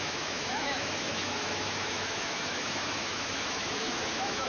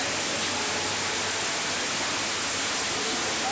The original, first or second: second